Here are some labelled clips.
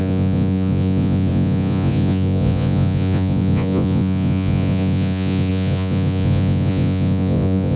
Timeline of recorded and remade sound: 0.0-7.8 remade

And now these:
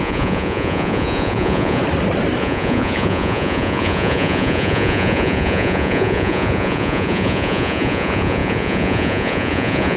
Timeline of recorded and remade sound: 0.0-1.8 remade; 1.8-2.4 recorded; 2.4-10.0 remade

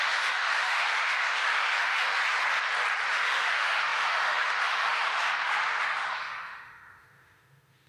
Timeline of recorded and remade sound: 0.0-2.2 remade; 2.2-3.1 recorded; 3.1-7.9 remade

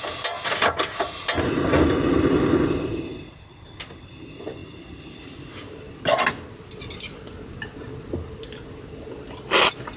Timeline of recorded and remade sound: 0.0-10.0 recorded

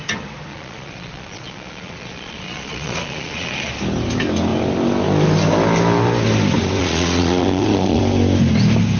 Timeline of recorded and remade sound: 0.0-0.5 recorded; 0.5-3.7 remade; 3.7-6.8 recorded; 6.8-8.0 remade; 8.0-9.0 recorded

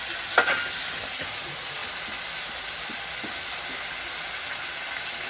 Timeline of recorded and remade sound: 0.0-5.3 recorded

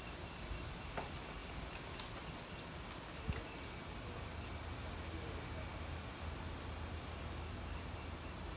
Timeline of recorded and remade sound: 0.0-8.6 recorded

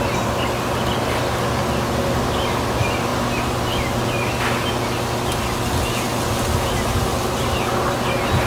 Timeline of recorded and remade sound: 0.0-8.5 recorded